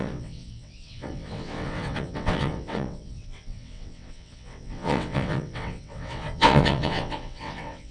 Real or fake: fake